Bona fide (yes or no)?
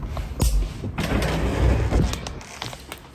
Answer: yes